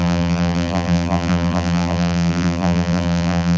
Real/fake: fake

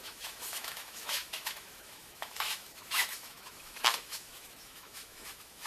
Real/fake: fake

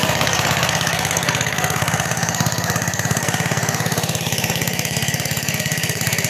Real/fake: fake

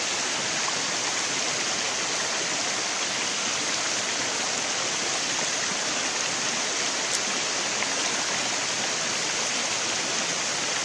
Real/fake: real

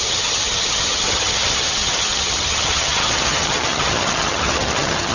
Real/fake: fake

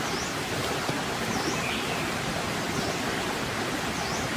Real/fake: real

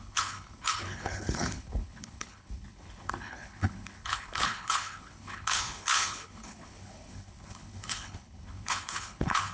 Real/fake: fake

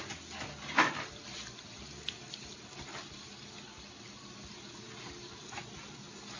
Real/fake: real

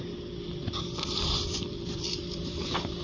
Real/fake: fake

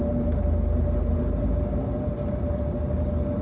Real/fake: real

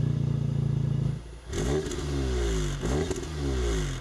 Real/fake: real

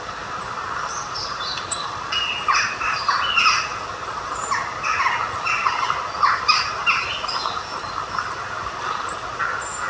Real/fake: real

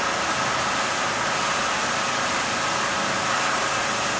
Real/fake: real